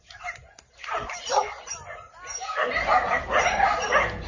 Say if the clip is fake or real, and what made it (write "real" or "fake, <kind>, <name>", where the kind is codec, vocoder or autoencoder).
real